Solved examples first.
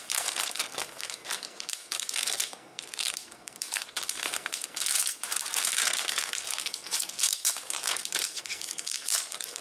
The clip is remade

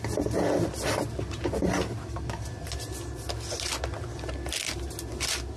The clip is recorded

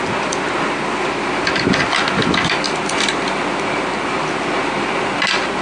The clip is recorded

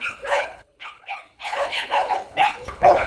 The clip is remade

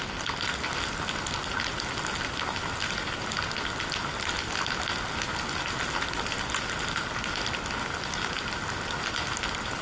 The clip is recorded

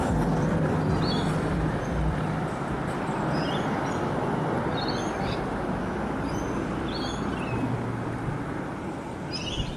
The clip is recorded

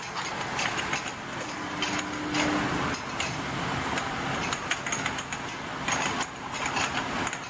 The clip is recorded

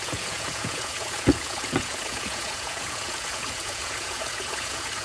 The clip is remade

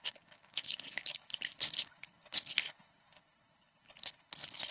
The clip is remade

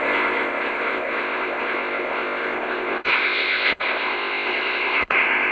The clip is remade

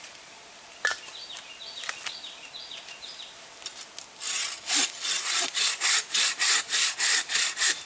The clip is recorded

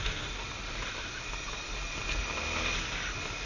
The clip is recorded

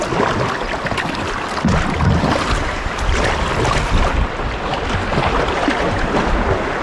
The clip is recorded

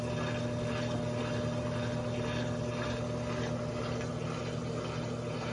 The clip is recorded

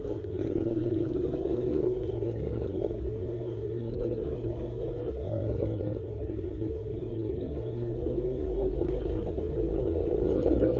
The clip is remade